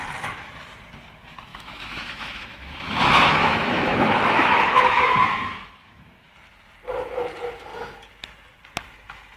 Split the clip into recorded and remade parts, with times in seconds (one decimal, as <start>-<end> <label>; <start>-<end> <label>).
0.0-1.5 recorded; 1.5-6.3 remade; 6.3-9.4 recorded